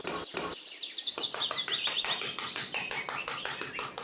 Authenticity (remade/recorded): recorded